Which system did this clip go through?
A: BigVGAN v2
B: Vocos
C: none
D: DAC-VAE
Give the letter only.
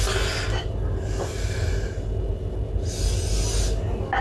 C